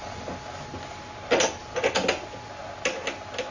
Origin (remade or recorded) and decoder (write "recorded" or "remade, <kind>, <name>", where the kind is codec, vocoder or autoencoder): recorded